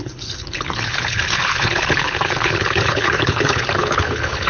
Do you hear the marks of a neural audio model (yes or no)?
yes